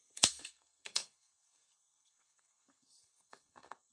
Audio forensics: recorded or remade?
remade